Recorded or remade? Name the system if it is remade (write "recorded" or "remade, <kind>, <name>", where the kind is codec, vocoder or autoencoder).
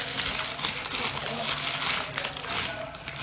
recorded